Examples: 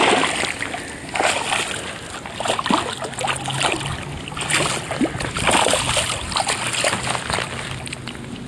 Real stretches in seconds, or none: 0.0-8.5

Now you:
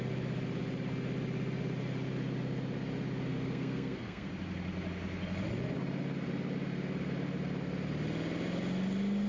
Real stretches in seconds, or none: 0.0-3.3; 4.3-9.3

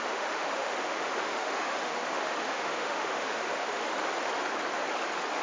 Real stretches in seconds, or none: 3.9-5.4

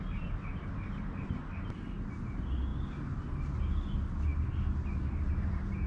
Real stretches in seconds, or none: 0.0-5.9

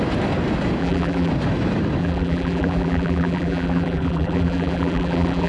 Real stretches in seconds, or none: 0.0-0.8; 1.3-2.0

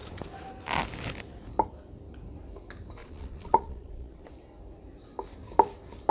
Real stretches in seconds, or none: 0.0-3.0; 4.3-6.1